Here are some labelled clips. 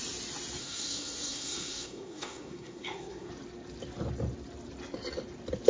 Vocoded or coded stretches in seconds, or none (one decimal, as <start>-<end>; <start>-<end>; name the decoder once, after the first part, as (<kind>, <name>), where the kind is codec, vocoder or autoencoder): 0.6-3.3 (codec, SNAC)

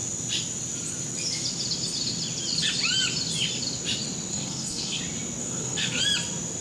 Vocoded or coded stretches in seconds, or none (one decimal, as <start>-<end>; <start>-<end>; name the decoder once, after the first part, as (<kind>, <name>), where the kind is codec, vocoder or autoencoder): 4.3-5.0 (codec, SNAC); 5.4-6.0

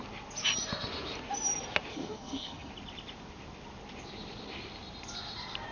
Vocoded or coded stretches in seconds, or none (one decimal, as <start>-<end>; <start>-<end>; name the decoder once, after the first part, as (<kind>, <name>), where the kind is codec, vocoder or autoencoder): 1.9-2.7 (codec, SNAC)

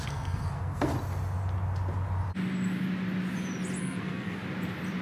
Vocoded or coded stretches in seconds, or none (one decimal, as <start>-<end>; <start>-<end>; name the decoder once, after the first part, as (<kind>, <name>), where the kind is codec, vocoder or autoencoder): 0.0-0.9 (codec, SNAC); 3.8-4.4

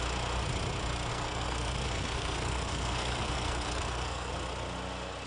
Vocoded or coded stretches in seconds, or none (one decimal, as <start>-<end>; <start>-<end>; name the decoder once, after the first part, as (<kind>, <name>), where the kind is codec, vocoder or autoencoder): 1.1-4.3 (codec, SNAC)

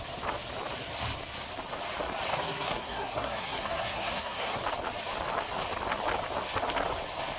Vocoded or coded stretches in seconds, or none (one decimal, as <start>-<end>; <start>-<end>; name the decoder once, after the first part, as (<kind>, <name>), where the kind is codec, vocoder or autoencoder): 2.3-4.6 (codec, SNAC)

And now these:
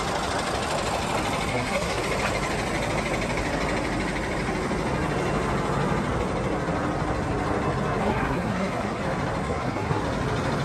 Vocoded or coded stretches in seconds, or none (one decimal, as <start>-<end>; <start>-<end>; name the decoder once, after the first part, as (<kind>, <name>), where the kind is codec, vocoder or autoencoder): 1.5-2.0 (codec, SNAC); 8.0-9.0; 9.4-10.0

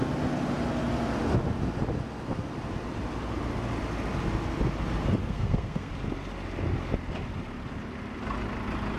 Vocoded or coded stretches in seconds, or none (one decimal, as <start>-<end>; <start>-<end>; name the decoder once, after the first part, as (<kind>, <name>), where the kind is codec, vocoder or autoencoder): 5.2-5.9 (codec, SNAC)